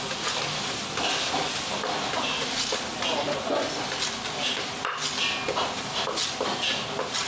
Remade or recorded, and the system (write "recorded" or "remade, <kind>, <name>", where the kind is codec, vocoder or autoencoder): recorded